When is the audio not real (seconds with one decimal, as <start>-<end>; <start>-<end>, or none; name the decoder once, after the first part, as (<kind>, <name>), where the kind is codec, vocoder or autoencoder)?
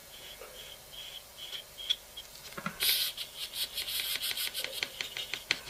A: 0.0-0.7 (vocoder, Vocos)